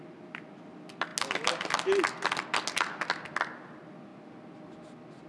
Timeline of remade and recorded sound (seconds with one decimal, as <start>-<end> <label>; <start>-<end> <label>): 0.0-5.3 recorded